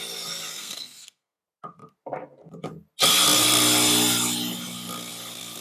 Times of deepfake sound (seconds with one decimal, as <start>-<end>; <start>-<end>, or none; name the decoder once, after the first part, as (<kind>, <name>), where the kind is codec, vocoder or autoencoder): 0.5-1.4 (codec, SNAC)